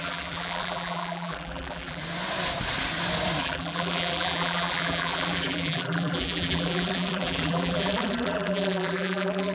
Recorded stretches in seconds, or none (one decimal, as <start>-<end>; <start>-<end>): 2.0-3.4